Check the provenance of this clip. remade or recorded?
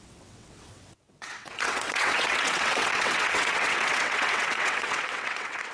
remade